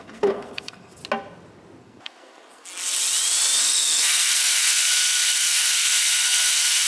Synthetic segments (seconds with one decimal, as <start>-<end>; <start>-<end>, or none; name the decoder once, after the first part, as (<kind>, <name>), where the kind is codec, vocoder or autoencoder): 0.0-1.0 (codec, SNAC); 1.8-2.7; 3.6-6.9